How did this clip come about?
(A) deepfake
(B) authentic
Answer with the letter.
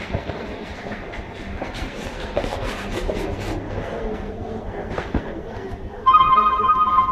A